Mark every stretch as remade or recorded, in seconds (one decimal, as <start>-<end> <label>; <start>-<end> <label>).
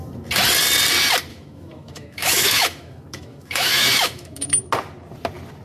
0.0-1.3 recorded; 1.3-4.7 remade; 4.7-5.6 recorded